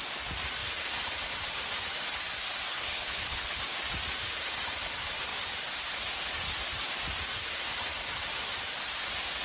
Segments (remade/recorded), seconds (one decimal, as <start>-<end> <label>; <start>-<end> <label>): 0.0-2.7 recorded; 2.7-3.6 remade; 3.6-9.4 recorded